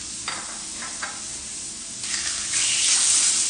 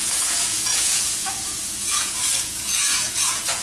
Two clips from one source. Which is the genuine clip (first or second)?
first